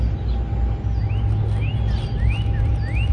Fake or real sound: real